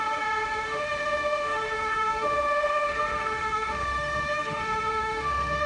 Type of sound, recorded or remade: remade